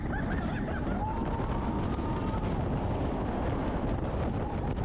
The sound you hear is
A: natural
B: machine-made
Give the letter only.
A